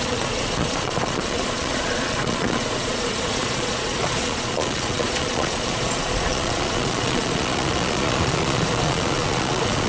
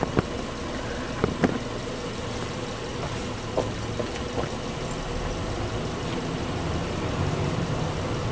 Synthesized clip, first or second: first